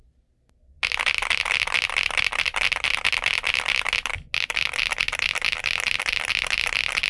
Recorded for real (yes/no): yes